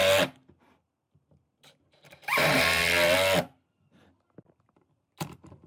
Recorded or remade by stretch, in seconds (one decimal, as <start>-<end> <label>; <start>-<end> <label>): 0.0-1.1 recorded; 1.1-2.8 remade; 2.8-5.0 recorded; 5.0-5.7 remade